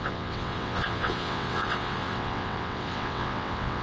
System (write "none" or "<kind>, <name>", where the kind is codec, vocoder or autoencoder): vocoder, WaveNeXt